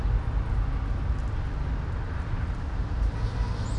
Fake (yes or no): no